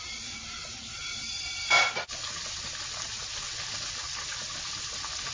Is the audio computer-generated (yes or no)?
no